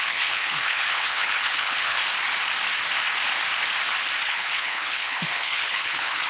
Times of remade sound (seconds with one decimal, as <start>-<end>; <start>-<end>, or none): 0.0-2.0; 4.2-6.3